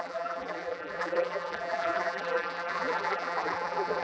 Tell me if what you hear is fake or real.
fake